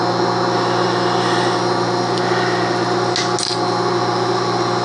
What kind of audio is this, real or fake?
real